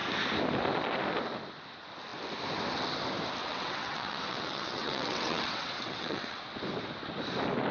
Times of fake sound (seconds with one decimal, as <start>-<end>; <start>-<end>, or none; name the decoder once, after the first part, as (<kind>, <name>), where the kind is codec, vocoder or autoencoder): 3.4-6.4 (vocoder, WaveNeXt)